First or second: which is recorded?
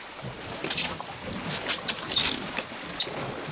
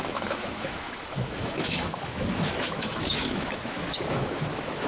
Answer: first